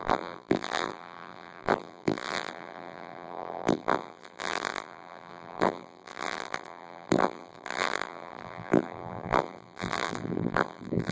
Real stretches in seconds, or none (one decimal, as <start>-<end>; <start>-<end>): none